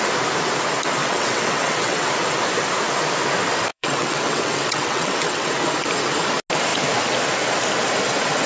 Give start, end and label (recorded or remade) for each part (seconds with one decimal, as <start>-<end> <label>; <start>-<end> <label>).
0.0-1.0 recorded; 1.0-2.1 remade; 2.1-3.7 recorded; 3.7-5.5 remade; 5.5-8.5 recorded